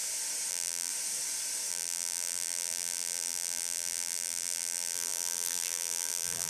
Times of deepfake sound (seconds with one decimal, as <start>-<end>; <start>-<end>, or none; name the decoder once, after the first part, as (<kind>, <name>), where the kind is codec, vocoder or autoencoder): 0.5-0.9 (vocoder, BigVGAN v2); 1.7-6.5